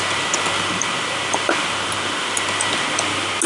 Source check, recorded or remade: recorded